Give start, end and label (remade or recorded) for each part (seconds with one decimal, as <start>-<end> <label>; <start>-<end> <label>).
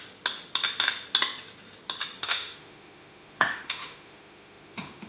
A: 0.0-2.2 recorded; 2.2-5.1 remade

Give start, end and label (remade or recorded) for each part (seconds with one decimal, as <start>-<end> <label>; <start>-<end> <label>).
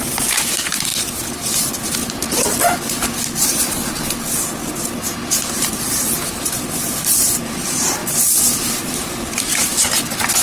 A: 0.0-10.4 recorded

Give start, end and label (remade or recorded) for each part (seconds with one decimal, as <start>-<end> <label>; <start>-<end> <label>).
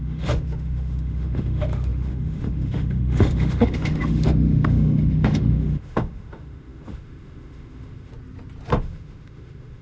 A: 0.0-8.1 remade; 8.1-8.8 recorded; 8.8-9.8 remade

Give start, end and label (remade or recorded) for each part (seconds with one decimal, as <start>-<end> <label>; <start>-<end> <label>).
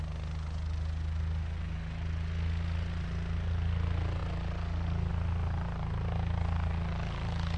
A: 0.0-7.6 recorded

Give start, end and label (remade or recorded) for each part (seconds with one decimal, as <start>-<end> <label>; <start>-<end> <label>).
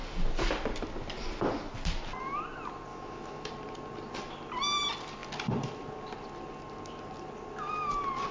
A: 0.0-2.9 recorded; 2.9-3.5 remade; 3.5-8.3 recorded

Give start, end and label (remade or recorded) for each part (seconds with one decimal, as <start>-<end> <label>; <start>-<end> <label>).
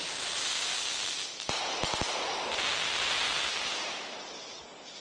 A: 0.0-0.7 recorded; 0.7-1.5 remade; 1.5-5.0 recorded